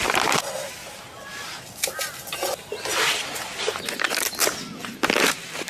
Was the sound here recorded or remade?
recorded